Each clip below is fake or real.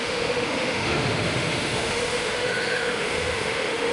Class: fake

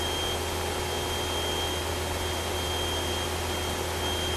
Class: real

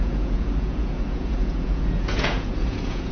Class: fake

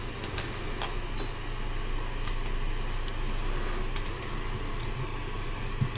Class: real